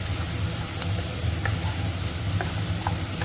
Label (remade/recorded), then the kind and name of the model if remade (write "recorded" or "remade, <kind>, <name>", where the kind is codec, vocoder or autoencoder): recorded